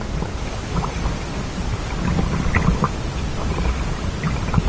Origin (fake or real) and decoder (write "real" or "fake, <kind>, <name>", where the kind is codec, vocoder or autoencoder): real